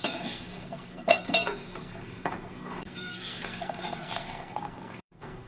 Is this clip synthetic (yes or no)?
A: yes